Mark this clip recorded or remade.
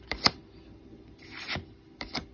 recorded